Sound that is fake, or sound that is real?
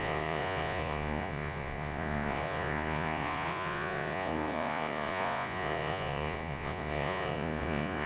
fake